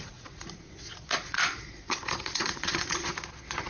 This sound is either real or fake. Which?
fake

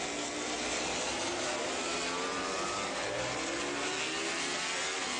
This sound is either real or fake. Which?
real